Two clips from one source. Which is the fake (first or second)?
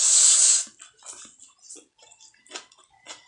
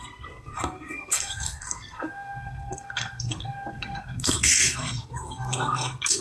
second